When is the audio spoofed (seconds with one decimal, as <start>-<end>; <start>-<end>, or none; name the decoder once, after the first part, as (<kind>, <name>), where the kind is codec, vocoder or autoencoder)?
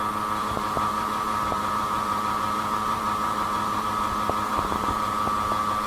0.4-3.9 (vocoder, BigVGAN v2); 4.5-5.1